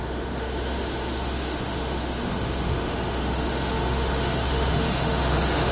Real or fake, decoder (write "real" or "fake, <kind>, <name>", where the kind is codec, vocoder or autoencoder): fake, autoencoder, DAC-VAE